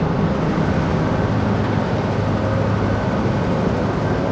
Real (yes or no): yes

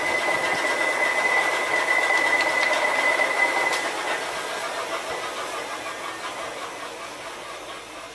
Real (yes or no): yes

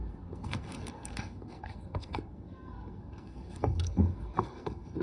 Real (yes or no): no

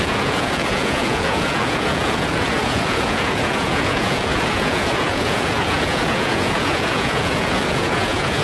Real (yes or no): no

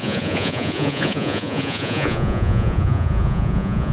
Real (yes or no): no